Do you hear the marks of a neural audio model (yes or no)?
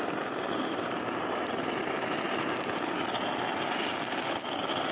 no